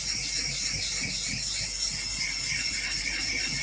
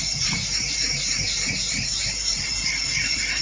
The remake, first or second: second